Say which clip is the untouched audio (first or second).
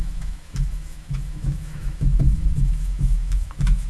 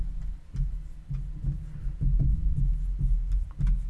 second